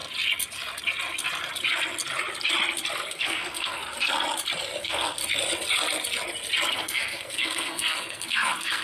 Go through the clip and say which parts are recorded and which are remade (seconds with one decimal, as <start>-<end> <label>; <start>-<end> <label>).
0.0-3.1 recorded; 3.1-3.8 remade; 3.8-4.8 recorded; 4.8-5.2 remade; 5.2-6.7 recorded; 6.7-8.8 remade

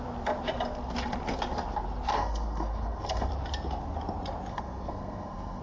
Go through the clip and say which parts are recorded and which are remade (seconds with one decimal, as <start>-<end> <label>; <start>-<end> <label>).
0.0-2.1 recorded; 2.1-3.3 remade; 3.3-4.5 recorded; 4.5-5.6 remade

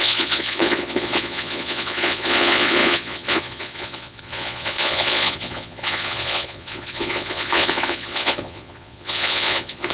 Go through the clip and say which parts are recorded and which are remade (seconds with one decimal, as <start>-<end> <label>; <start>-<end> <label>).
0.0-9.9 remade

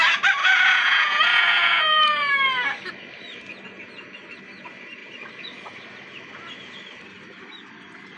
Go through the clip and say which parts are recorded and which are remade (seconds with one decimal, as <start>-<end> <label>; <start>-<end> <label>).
0.0-0.4 recorded; 0.4-2.3 remade; 2.3-8.2 recorded

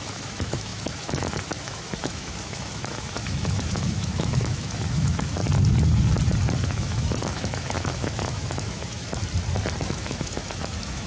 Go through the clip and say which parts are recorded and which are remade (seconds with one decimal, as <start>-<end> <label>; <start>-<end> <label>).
0.0-5.4 remade; 5.4-6.6 recorded; 6.6-9.2 remade; 9.2-9.8 recorded; 9.8-11.1 remade

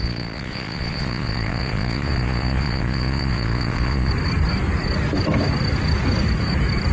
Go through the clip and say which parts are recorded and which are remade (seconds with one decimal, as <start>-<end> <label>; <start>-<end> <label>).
0.0-4.1 remade; 4.1-6.9 recorded

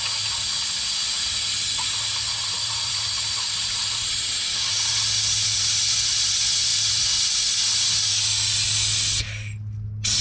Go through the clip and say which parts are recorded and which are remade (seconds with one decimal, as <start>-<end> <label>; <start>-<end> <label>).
0.0-2.1 recorded; 2.1-4.1 remade; 4.1-10.2 recorded

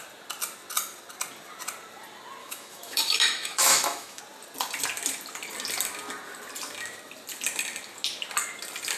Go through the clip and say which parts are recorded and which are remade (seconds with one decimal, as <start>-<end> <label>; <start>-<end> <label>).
0.0-2.4 recorded; 2.4-4.2 remade; 4.2-9.0 recorded